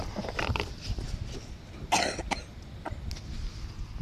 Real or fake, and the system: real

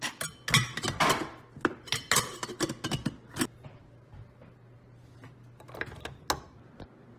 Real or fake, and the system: real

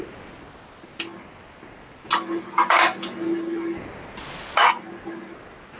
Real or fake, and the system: real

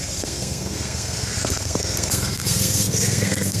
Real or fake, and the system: fake, codec, SNAC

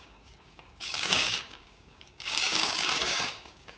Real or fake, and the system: fake, codec, DAC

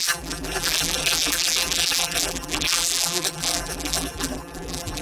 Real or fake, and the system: fake, vocoder, BigVGAN v2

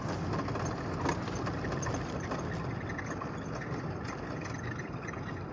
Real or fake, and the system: real